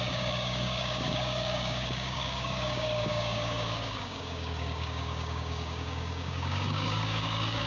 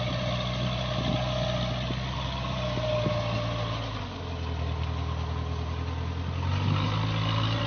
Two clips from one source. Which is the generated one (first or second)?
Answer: first